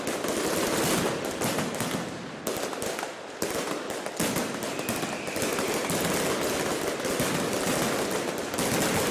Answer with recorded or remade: recorded